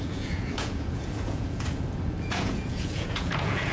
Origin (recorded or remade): remade